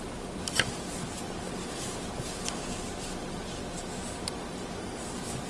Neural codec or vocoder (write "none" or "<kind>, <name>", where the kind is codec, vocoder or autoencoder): none